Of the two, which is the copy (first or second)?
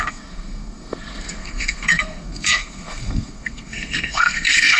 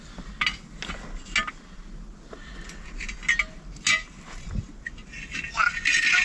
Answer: first